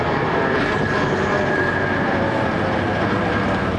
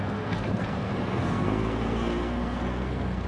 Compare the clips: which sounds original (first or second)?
first